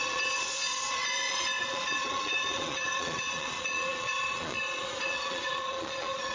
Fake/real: fake